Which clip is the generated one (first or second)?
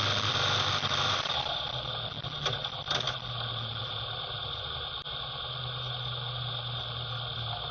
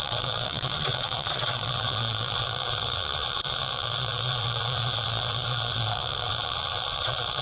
second